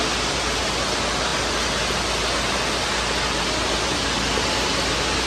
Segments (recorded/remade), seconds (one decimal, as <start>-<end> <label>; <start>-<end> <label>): 0.0-5.3 recorded